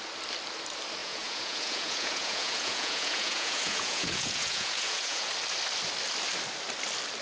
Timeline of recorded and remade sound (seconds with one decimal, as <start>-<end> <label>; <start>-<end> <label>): 0.0-1.0 recorded; 1.0-5.3 remade; 5.3-7.2 recorded